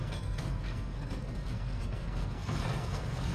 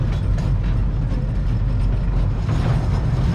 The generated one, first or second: first